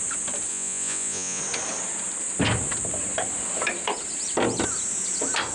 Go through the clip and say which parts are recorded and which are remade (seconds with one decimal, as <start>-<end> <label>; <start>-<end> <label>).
0.0-0.5 recorded; 0.5-1.4 remade; 1.4-5.5 recorded